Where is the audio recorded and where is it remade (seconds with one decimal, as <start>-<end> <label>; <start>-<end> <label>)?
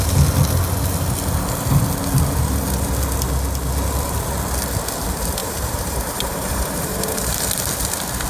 0.0-5.4 recorded; 5.4-7.4 remade; 7.4-8.3 recorded